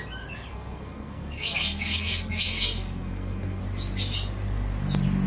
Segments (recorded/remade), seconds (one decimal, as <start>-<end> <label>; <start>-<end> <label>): 0.0-0.5 recorded; 0.5-3.6 remade; 3.6-5.3 recorded